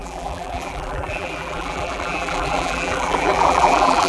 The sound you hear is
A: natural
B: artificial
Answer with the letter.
B